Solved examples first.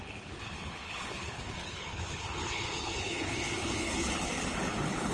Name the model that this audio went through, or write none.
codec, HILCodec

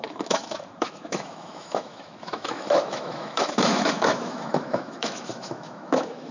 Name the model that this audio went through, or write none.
autoencoder, DAC-VAE